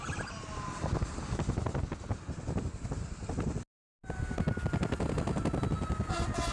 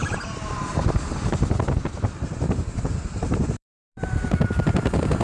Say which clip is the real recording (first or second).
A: first